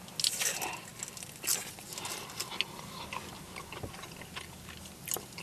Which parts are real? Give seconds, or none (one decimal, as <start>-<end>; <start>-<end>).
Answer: 0.0-5.4